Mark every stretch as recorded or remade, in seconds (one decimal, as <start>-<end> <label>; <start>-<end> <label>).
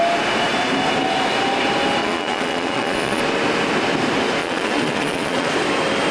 0.0-2.0 recorded; 2.0-3.2 remade; 3.2-4.4 recorded; 4.4-5.5 remade; 5.5-6.1 recorded